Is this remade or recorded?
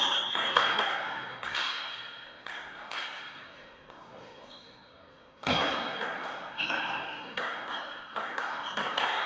remade